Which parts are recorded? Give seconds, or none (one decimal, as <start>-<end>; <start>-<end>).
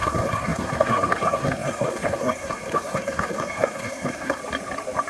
4.4-5.1